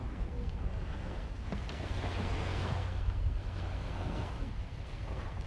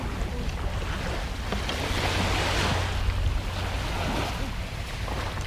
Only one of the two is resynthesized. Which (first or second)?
first